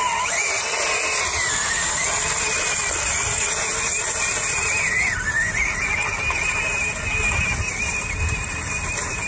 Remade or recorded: recorded